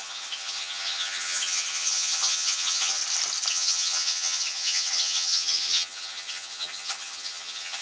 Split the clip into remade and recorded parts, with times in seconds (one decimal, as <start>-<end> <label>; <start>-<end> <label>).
0.0-3.0 remade; 3.0-3.5 recorded; 3.5-7.8 remade